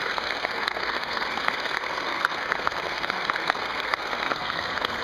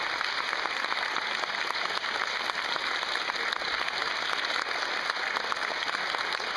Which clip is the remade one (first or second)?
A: first